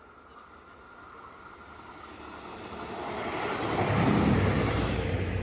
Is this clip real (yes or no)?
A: yes